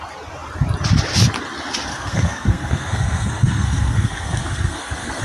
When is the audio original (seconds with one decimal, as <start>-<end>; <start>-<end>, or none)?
0.0-1.9